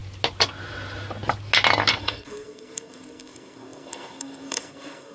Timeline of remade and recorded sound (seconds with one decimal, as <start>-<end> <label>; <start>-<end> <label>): 0.0-2.0 recorded; 2.0-5.1 remade